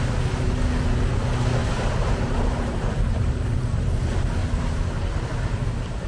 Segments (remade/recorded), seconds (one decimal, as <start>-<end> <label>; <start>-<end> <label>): 0.0-1.6 recorded; 1.6-3.9 remade; 3.9-6.1 recorded